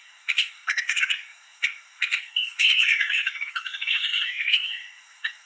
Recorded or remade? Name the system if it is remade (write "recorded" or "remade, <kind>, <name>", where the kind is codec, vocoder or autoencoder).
remade, codec, SNAC